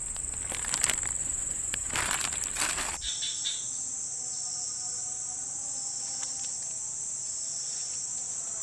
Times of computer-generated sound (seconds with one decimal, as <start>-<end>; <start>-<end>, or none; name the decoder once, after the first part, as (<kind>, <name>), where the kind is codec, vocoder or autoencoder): 1.2-1.9 (vocoder, Vocos)